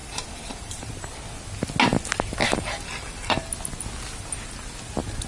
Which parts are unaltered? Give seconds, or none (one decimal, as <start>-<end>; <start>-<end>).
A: 0.9-2.4; 3.5-5.3